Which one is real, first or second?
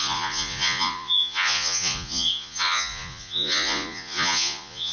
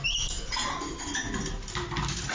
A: second